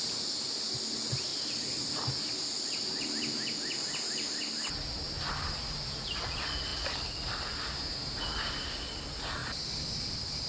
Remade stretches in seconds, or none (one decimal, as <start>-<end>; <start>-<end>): none